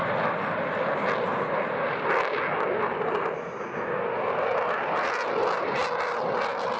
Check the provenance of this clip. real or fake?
real